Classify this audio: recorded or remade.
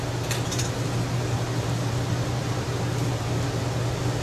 recorded